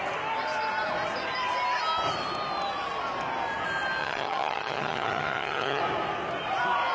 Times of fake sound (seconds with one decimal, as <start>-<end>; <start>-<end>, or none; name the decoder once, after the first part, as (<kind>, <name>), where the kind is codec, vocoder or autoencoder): 4.0-5.8 (vocoder, HiFi-GAN)